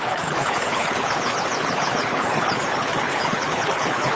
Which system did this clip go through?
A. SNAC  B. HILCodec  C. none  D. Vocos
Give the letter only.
B